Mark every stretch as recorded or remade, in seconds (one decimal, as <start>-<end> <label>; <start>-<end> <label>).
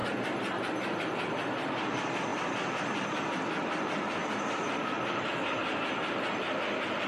0.0-1.0 recorded; 1.0-5.6 remade; 5.6-7.1 recorded